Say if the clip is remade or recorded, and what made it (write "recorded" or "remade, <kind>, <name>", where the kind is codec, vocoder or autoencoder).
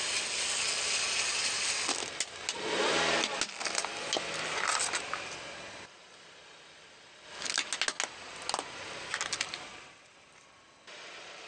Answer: recorded